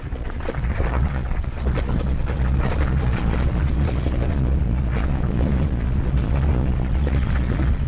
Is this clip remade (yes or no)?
yes